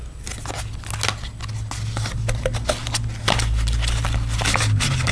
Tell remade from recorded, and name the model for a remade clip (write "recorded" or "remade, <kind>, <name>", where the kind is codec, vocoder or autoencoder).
recorded